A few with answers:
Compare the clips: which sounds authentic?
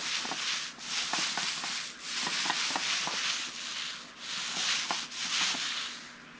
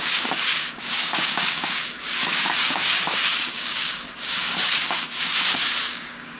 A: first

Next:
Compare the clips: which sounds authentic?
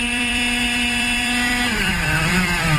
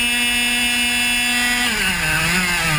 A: second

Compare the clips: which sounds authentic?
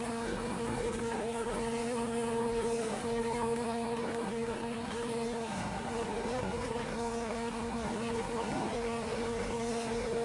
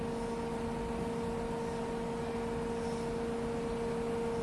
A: second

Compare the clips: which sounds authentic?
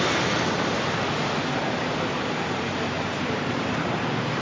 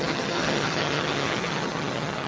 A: first